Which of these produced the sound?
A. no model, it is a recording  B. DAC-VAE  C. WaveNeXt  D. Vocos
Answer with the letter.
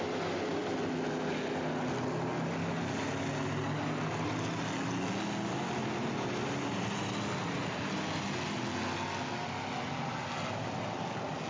A